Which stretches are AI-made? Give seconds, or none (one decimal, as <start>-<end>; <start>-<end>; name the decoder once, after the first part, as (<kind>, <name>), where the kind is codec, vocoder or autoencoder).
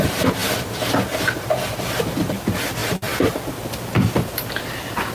0.0-5.1 (vocoder, BigVGAN v2)